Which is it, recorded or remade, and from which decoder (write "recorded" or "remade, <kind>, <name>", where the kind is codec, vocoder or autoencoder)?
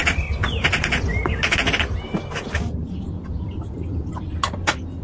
recorded